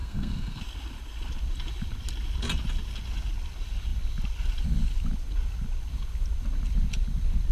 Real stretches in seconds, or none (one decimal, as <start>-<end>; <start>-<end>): 0.6-7.5